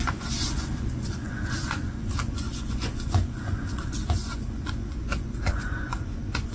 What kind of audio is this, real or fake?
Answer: fake